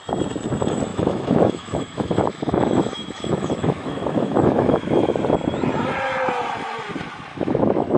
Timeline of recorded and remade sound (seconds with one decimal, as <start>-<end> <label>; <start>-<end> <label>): 0.0-0.9 recorded; 0.9-5.2 remade; 5.2-7.3 recorded; 7.3-8.0 remade